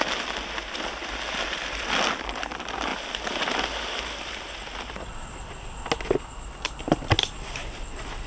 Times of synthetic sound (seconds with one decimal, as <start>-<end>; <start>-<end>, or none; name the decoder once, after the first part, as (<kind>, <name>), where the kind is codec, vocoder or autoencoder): none